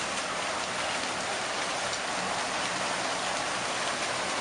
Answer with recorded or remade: recorded